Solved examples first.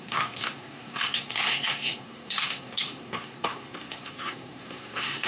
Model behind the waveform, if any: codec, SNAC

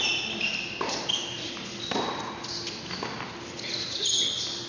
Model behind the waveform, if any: none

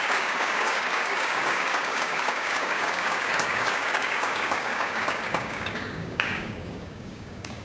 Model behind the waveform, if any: codec, DAC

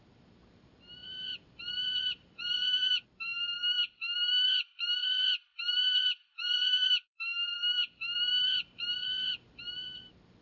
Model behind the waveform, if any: vocoder, BigVGAN v2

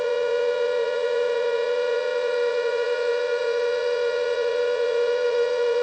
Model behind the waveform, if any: vocoder, Vocos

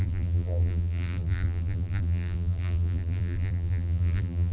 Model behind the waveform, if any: vocoder, BigVGAN v2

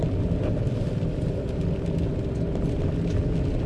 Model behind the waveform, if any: none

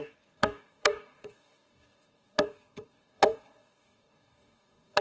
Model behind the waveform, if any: codec, DAC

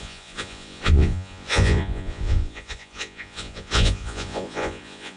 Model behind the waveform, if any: vocoder, Vocos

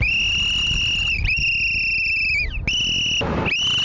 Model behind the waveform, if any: none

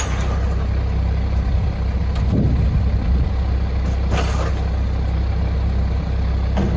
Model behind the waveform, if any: none